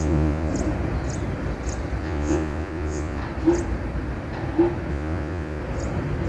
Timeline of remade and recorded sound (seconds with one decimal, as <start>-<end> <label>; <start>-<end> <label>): 0.0-0.5 remade; 0.5-2.0 recorded; 2.0-3.2 remade; 3.2-4.9 recorded; 4.9-5.6 remade; 5.6-6.3 recorded